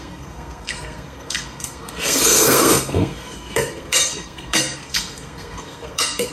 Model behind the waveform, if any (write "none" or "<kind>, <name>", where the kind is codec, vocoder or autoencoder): codec, SNAC